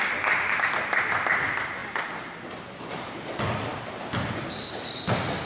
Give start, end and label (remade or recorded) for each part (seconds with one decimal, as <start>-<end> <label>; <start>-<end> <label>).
0.0-5.5 recorded